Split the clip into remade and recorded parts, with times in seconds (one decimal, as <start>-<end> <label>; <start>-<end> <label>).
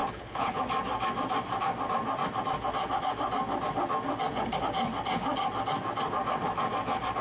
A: 0.0-0.6 remade; 0.6-7.2 recorded